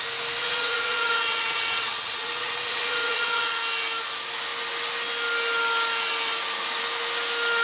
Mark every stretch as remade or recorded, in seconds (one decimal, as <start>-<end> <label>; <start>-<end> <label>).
0.0-0.4 recorded; 0.4-3.6 remade; 3.6-7.6 recorded